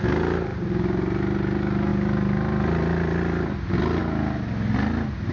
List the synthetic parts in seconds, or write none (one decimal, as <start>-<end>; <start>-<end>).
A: none